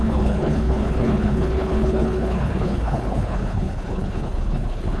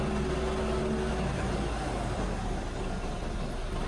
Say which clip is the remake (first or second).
first